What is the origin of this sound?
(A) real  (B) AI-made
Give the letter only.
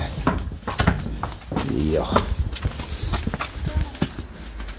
A